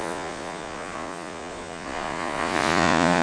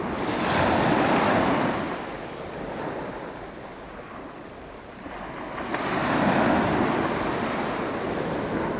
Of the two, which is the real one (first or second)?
second